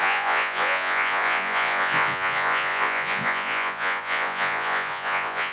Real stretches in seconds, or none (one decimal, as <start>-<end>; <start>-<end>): none